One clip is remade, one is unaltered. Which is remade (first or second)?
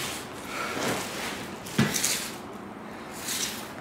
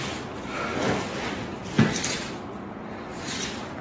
second